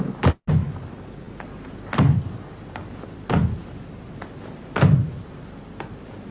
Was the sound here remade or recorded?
recorded